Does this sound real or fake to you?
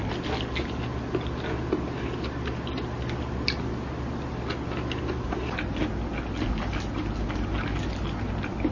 real